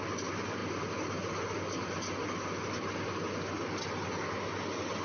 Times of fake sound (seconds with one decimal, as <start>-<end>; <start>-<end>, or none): none